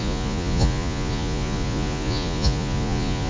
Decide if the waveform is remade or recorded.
remade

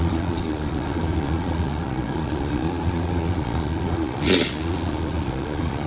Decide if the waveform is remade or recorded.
remade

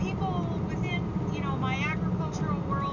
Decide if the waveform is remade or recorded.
recorded